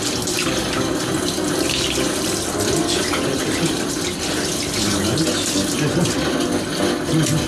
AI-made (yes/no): no